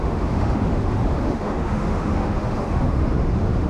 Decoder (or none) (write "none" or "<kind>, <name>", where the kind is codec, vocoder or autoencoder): autoencoder, DAC-VAE